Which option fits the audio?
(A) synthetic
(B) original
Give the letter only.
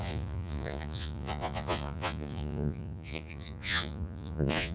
A